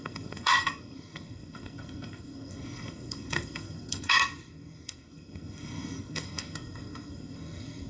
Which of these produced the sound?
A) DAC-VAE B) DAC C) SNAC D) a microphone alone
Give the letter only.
C